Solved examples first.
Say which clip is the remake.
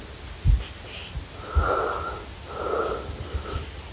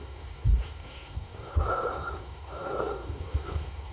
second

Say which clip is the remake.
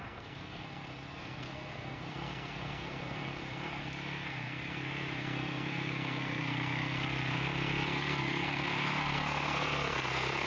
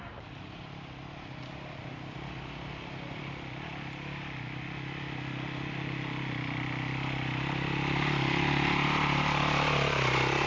first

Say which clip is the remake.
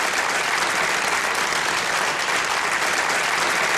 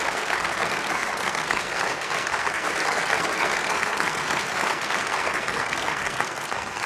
second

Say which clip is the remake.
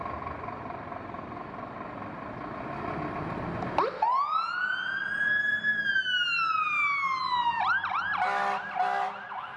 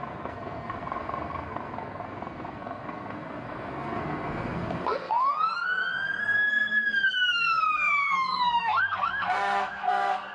second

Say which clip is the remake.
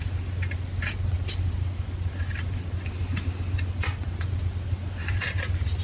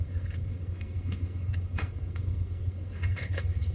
second